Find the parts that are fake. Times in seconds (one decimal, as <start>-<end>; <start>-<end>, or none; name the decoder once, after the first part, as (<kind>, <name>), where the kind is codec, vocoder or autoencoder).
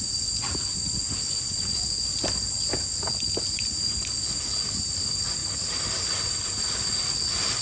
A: none